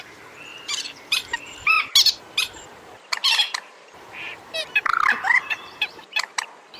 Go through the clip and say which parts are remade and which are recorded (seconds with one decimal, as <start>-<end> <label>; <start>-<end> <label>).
0.0-0.5 recorded; 0.5-1.8 remade; 1.8-3.2 recorded; 3.2-6.3 remade; 6.3-6.8 recorded